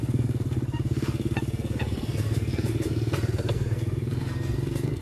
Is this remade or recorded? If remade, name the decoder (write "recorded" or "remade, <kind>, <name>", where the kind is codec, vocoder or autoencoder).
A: remade, codec, SNAC